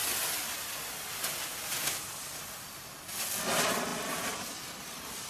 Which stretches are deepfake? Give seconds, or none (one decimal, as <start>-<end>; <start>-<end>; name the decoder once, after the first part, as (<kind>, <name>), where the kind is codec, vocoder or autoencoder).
none

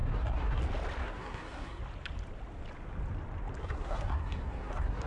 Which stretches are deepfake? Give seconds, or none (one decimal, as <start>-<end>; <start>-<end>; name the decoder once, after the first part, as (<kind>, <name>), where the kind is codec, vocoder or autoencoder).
0.0-0.6 (codec, SNAC); 1.0-1.8; 3.6-5.1

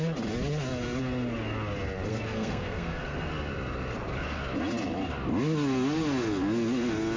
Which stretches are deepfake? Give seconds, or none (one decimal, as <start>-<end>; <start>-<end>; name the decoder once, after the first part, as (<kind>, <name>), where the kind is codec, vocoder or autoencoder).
2.1-3.3 (codec, SNAC)